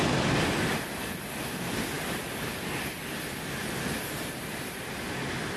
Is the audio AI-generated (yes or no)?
no